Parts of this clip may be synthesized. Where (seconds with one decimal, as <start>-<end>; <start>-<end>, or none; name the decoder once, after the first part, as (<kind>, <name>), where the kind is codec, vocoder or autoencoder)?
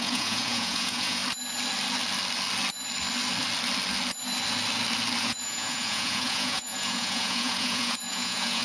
0.0-1.2 (vocoder, Vocos); 5.2-8.6